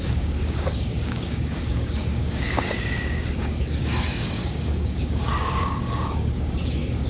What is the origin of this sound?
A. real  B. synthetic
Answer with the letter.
B